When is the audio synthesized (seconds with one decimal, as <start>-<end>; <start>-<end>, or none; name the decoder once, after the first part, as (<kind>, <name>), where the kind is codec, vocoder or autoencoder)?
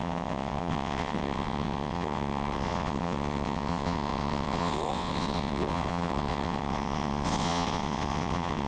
0.0-8.7 (vocoder, WaveNeXt)